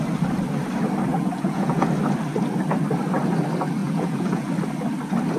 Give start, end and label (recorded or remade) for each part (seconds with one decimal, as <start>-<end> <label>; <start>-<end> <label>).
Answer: 0.0-1.1 recorded; 1.1-1.9 remade; 1.9-3.8 recorded; 3.8-4.5 remade; 4.5-5.4 recorded